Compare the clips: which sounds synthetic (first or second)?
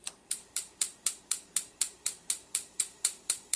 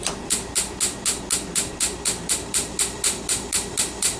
first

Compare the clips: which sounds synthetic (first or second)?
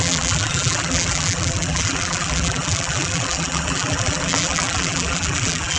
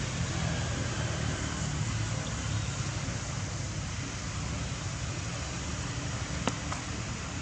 first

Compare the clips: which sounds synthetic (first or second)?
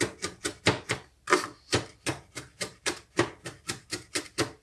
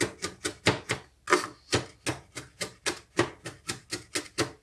first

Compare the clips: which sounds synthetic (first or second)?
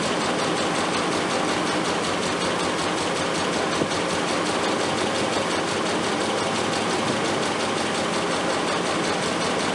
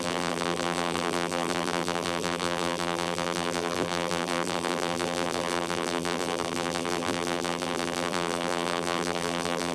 second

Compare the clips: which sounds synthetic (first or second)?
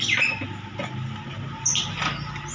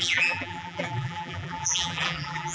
second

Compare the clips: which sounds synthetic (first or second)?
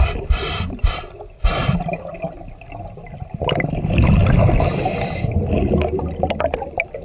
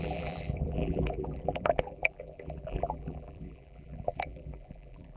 second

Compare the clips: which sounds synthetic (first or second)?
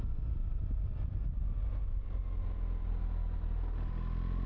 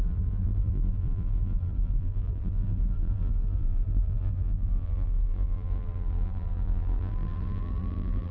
second